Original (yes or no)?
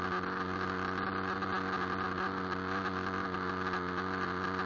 yes